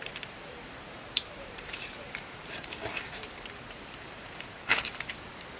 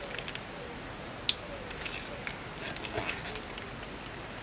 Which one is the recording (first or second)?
second